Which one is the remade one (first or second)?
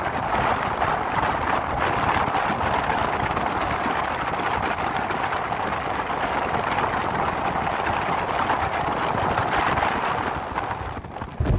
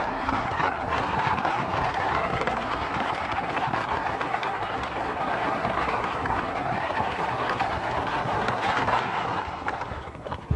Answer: second